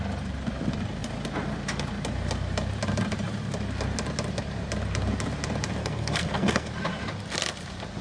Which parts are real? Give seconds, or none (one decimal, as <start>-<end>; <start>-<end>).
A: 0.0-5.8; 6.7-8.0